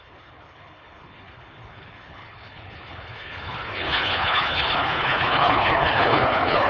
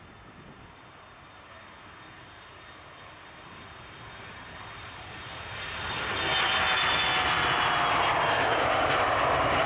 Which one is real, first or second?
second